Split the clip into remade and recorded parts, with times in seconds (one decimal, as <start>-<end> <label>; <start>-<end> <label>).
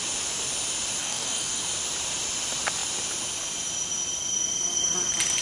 0.0-1.0 recorded; 1.0-1.6 remade; 1.6-5.4 recorded